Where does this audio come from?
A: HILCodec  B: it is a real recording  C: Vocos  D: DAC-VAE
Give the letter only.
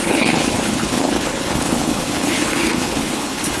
A